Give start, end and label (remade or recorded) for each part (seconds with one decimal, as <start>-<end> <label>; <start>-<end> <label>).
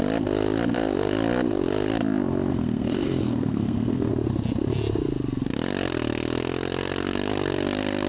0.0-2.5 recorded; 2.5-4.1 remade; 4.1-8.1 recorded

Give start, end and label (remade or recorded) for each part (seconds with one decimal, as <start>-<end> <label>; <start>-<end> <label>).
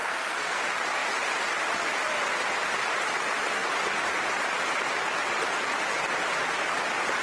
0.0-0.6 remade; 0.6-7.2 recorded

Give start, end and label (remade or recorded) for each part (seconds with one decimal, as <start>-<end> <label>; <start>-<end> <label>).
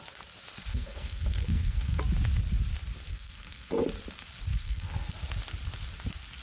0.0-0.7 recorded; 0.7-2.0 remade; 2.0-3.1 recorded; 3.1-3.7 remade; 3.7-4.5 recorded; 4.5-5.1 remade; 5.1-6.4 recorded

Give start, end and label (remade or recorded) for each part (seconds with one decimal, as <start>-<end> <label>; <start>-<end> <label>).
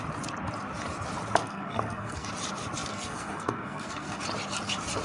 0.0-1.4 recorded; 1.4-2.3 remade; 2.3-2.9 recorded; 2.9-4.2 remade; 4.2-5.0 recorded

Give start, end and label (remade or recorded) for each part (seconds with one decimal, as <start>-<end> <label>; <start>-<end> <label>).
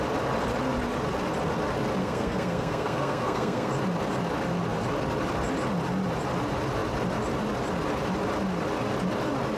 0.0-2.0 recorded; 2.0-3.7 remade; 3.7-9.6 recorded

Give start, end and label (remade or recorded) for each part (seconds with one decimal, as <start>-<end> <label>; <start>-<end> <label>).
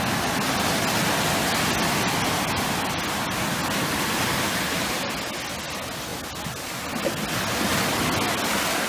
0.0-8.9 recorded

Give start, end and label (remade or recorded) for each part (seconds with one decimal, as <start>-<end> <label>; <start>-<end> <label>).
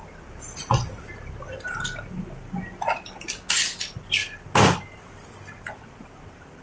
0.0-6.6 recorded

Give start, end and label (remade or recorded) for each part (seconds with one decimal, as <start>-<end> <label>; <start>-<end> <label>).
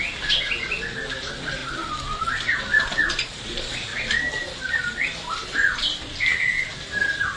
0.0-7.4 recorded